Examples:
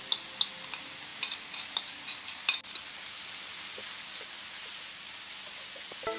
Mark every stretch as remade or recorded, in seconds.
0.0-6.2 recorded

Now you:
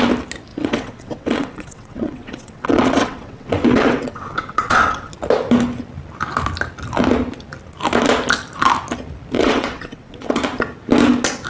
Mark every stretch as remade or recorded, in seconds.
0.0-0.5 recorded; 0.5-5.1 remade; 5.1-9.4 recorded; 9.4-10.4 remade; 10.4-11.5 recorded

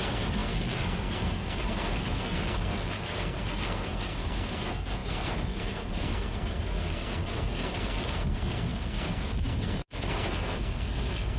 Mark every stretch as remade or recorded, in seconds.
0.0-11.4 remade

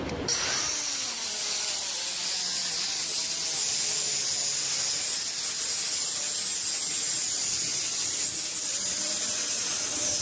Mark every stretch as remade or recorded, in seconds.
0.0-2.6 remade; 2.6-6.9 recorded; 6.9-10.2 remade

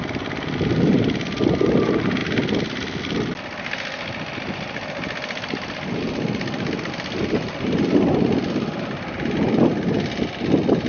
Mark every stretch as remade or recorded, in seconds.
0.0-10.9 recorded

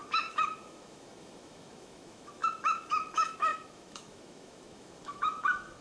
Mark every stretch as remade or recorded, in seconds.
0.0-5.8 remade